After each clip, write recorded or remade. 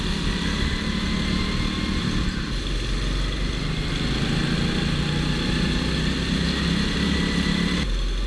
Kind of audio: recorded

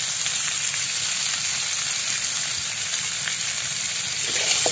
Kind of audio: recorded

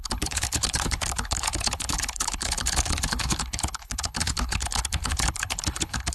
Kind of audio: remade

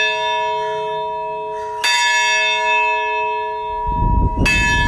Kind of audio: recorded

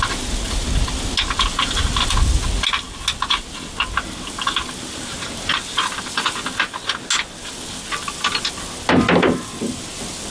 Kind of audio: recorded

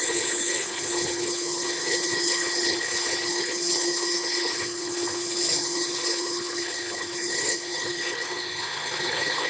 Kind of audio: remade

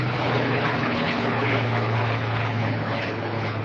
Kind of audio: remade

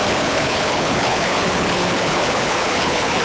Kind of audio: remade